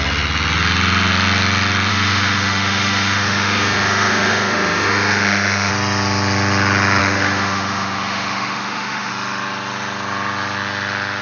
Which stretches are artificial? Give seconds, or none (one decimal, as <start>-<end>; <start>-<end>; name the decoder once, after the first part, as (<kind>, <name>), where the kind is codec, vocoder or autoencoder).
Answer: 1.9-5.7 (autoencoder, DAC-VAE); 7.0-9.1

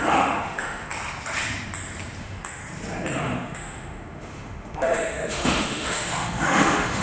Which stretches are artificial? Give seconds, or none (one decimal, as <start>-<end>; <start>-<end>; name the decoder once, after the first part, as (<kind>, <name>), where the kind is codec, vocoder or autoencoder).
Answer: 0.0-0.9 (autoencoder, DAC-VAE); 2.2-2.6; 3.2-7.0

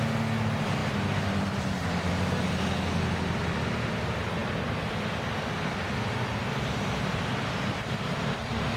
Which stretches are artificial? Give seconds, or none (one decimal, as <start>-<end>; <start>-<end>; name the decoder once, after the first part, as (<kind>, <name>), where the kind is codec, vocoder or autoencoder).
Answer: none